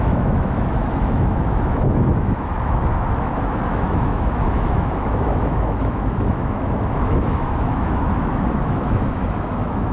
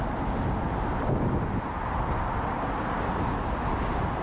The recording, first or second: second